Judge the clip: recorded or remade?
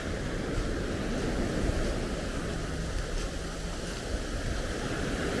recorded